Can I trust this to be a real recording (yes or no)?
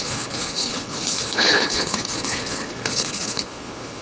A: no